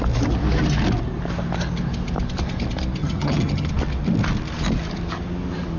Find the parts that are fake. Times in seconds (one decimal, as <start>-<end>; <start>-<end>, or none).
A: 3.0-3.7